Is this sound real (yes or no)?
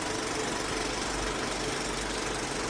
yes